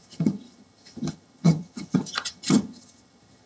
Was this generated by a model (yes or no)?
yes